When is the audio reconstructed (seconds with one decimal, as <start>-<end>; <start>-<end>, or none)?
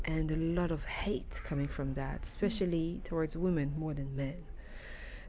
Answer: none